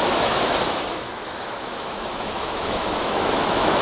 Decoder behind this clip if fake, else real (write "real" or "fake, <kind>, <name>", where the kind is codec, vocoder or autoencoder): fake, autoencoder, DAC-VAE